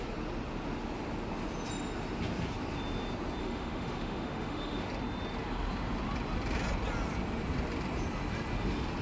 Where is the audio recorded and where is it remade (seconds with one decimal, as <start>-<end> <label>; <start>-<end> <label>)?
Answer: 0.0-3.4 recorded; 3.4-4.9 remade; 4.9-9.0 recorded